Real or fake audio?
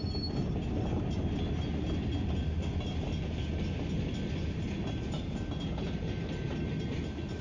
real